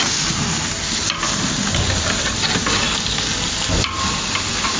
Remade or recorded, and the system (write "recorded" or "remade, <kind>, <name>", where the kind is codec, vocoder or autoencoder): recorded